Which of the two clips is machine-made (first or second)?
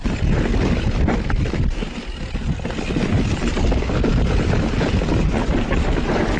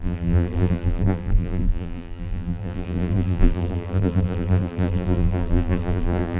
second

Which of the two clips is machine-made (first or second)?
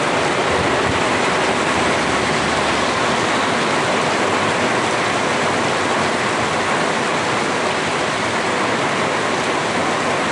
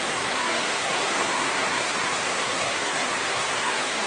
second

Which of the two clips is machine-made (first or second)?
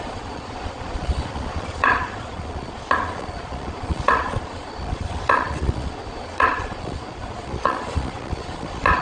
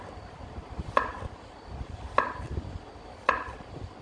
first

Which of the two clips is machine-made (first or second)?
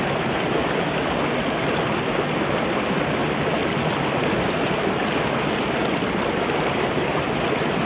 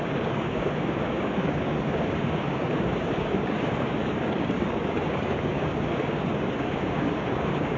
second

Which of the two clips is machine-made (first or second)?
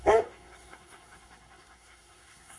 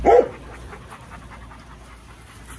first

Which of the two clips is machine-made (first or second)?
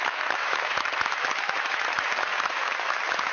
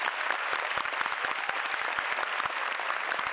first